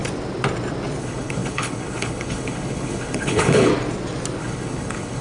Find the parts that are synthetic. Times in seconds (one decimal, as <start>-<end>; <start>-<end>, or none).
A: 1.0-3.7; 4.4-5.2

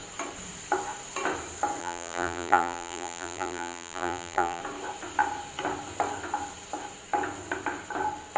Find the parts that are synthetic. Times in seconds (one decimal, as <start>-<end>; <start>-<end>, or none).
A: 1.8-4.6